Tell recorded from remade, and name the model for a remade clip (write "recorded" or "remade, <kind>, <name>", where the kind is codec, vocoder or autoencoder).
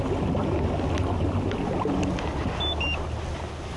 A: recorded